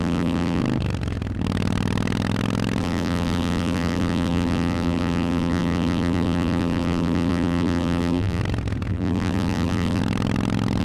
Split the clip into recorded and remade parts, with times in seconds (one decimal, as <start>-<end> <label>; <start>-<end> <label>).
0.0-0.6 remade; 0.6-2.8 recorded; 2.8-8.4 remade; 8.4-8.9 recorded; 8.9-10.0 remade; 10.0-10.8 recorded